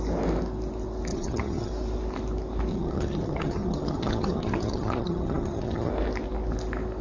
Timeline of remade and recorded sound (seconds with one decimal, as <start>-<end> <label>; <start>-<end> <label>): 0.0-1.1 recorded; 1.1-1.7 remade; 1.7-2.7 recorded; 2.7-5.9 remade; 5.9-7.0 recorded